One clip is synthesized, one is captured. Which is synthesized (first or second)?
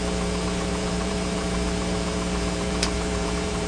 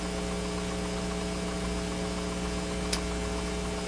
first